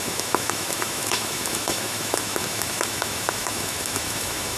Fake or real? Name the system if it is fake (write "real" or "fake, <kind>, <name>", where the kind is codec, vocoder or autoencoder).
fake, autoencoder, DAC-VAE